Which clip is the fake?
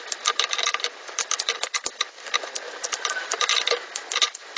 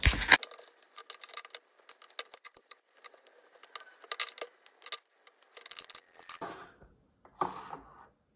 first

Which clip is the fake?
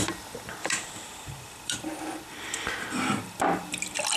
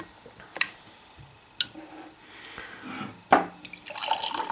first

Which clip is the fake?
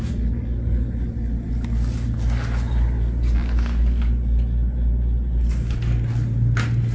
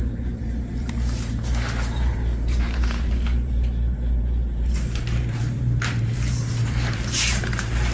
second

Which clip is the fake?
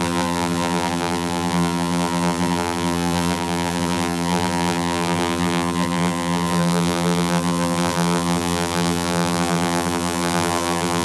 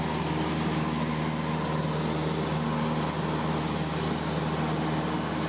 first